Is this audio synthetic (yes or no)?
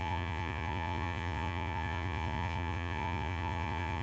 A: yes